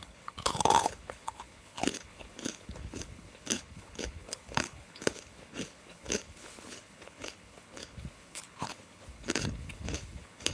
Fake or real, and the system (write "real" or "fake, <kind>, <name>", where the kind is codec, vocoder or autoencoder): fake, codec, HILCodec